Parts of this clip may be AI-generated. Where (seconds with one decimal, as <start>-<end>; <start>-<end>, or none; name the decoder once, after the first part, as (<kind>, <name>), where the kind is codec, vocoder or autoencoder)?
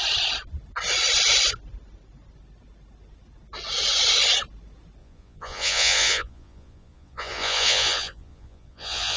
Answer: 5.0-9.2 (vocoder, Vocos)